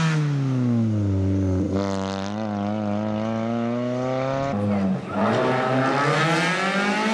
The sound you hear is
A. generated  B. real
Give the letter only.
B